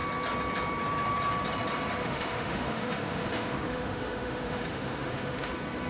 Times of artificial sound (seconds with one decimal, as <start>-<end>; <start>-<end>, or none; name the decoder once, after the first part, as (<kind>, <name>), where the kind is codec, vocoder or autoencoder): 2.0-5.5 (autoencoder, DAC-VAE)